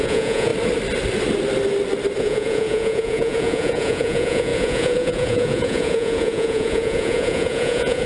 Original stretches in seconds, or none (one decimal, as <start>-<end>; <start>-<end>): 0.5-2.2

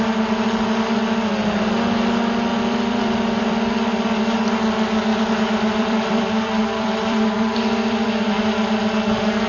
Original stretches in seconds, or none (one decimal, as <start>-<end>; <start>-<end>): 0.0-2.5; 4.2-5.1; 8.4-9.5

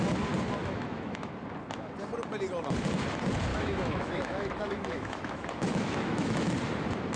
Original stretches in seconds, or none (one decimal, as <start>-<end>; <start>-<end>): 0.0-0.6; 1.3-3.5; 6.5-7.2